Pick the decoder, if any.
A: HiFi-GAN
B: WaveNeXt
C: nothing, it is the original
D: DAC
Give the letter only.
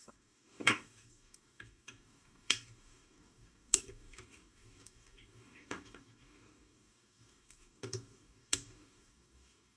D